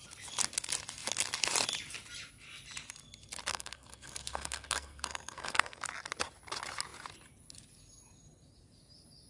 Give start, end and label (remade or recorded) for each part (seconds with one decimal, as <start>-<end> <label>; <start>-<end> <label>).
0.0-3.5 recorded; 3.5-5.8 remade; 5.8-9.3 recorded